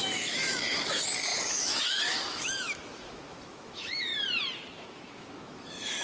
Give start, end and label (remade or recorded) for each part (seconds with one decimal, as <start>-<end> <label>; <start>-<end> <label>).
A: 0.0-4.1 remade; 4.1-4.7 recorded; 4.7-6.0 remade